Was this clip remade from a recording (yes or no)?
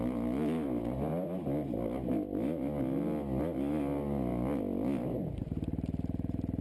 no